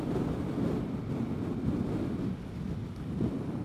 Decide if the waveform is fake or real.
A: real